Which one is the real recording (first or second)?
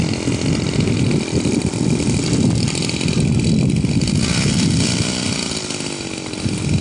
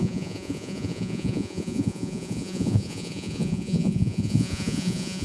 first